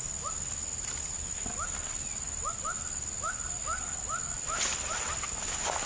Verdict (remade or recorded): recorded